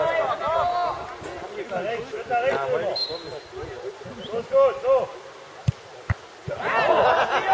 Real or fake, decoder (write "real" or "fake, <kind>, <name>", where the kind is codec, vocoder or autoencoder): real